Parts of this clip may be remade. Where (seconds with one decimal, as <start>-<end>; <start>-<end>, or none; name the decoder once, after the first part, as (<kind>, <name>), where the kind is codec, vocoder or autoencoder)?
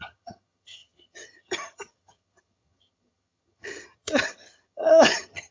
0.0-5.5 (vocoder, HiFi-GAN)